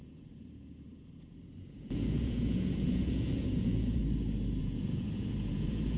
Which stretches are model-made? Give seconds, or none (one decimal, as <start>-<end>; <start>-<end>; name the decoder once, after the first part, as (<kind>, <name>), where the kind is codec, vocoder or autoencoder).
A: 0.0-4.0 (vocoder, Vocos); 4.6-6.0